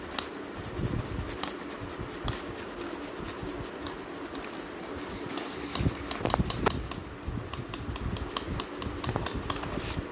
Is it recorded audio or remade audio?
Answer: recorded